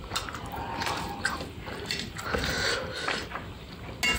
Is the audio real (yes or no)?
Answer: yes